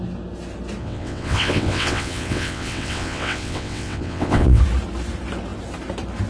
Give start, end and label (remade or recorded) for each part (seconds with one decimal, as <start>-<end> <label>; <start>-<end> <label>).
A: 0.0-0.8 recorded; 0.8-4.6 remade; 4.6-6.3 recorded